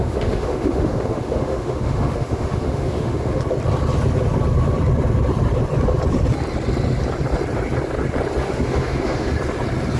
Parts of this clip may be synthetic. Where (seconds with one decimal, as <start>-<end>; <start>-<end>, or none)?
0.0-3.4; 8.4-9.3